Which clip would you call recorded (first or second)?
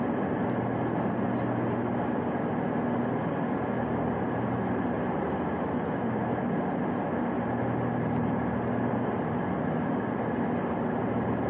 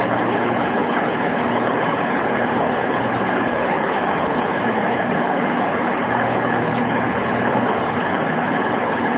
first